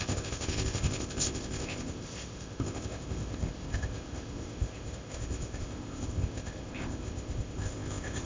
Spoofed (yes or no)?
yes